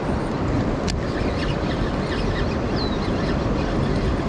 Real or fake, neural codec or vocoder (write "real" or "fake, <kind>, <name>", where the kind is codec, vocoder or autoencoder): real